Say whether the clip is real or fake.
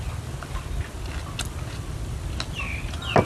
real